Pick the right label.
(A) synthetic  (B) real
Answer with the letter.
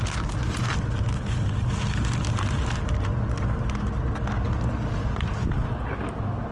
B